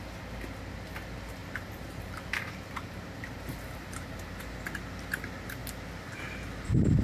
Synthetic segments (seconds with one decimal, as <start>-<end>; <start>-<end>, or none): 1.4-4.4